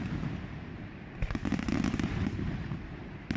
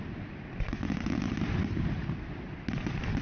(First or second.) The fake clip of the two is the first